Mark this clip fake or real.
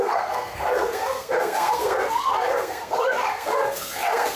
fake